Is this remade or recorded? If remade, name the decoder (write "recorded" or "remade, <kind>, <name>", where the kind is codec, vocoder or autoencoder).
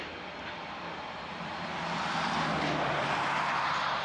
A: recorded